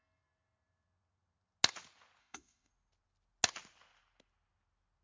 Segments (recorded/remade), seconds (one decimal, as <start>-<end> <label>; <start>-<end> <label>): 0.0-2.2 recorded; 2.2-2.7 remade; 2.7-5.0 recorded